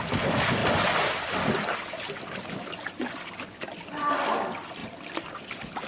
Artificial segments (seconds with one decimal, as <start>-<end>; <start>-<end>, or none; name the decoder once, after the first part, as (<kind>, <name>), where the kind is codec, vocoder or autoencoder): none